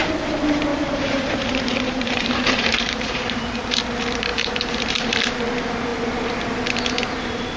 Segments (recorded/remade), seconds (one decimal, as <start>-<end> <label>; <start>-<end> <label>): 0.0-0.7 recorded; 0.7-3.4 remade; 3.4-4.3 recorded; 4.3-5.2 remade; 5.2-7.6 recorded

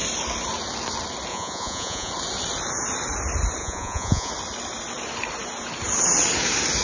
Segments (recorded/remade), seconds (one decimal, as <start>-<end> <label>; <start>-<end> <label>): 0.0-1.3 recorded; 1.3-2.1 remade; 2.1-3.6 recorded; 3.6-4.3 remade; 4.3-6.8 recorded

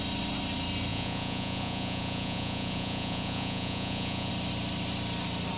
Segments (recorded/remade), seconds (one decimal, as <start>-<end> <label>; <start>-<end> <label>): 0.0-0.9 recorded; 0.9-4.3 remade; 4.3-5.6 recorded

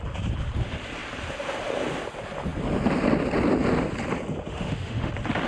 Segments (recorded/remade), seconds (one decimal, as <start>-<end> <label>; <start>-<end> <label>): 0.0-4.5 recorded; 4.5-5.1 remade; 5.1-5.5 recorded

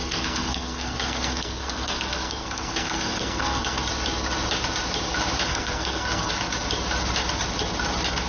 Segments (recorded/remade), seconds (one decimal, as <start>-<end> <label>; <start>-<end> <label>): 0.0-3.8 remade; 3.8-5.5 recorded; 5.5-6.3 remade; 6.3-8.3 recorded

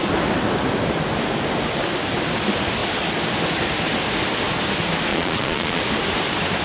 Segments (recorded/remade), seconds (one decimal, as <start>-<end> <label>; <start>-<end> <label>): 0.0-5.1 recorded; 5.1-5.8 remade; 5.8-6.6 recorded

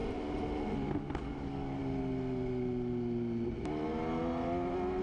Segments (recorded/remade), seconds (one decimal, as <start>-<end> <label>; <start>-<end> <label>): 0.0-1.2 recorded; 1.2-1.8 remade; 1.8-5.0 recorded

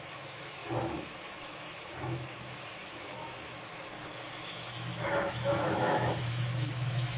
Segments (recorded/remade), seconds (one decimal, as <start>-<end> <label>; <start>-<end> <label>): 0.0-7.2 remade